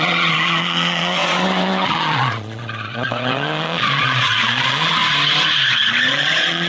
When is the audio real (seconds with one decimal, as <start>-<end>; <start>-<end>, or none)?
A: 5.0-6.1

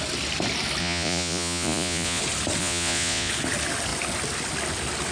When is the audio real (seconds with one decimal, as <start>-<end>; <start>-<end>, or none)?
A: 0.0-0.8; 2.2-2.6; 3.3-5.1

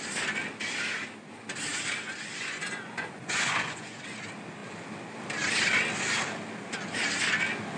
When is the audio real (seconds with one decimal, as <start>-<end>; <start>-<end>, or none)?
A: 0.0-1.7; 4.0-7.8

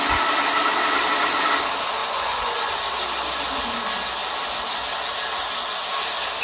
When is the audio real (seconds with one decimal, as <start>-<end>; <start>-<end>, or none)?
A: 0.0-2.0; 2.7-6.4

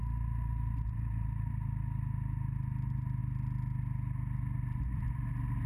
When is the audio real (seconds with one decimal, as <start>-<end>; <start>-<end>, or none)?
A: 0.0-5.7

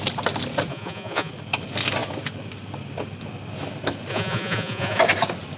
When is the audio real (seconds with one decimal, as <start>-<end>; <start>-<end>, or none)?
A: 0.0-0.7; 1.3-4.1; 5.0-5.6

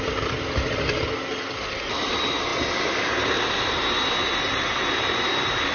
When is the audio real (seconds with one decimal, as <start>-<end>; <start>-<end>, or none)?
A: 0.0-5.7

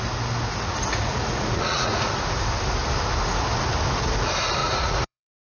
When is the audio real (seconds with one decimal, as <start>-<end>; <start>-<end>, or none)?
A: 0.0-0.9; 2.1-4.6